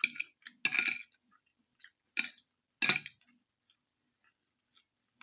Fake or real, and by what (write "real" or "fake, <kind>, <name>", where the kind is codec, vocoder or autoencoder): real